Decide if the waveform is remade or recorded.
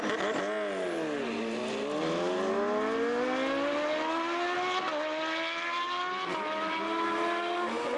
recorded